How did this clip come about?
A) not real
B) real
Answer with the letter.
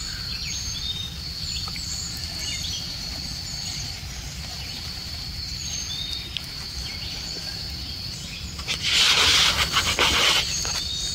B